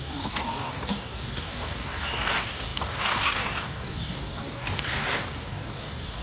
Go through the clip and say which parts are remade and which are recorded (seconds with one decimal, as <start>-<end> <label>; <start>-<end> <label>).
0.0-6.2 remade